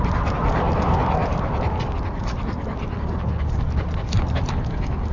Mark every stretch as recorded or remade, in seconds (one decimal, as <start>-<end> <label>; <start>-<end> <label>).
0.0-5.1 recorded